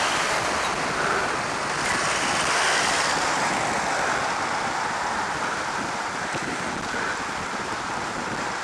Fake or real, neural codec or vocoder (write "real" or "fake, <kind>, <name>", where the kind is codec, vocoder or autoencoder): real